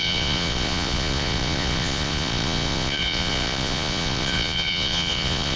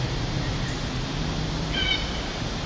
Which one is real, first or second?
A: second